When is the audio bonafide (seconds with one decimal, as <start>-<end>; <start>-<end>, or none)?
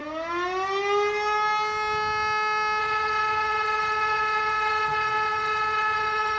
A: 0.0-2.8